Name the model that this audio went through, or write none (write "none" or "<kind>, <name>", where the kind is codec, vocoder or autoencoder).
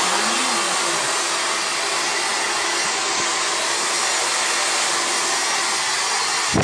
none